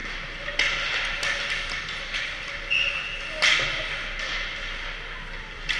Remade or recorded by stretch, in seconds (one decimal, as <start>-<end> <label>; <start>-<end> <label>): 0.0-5.8 recorded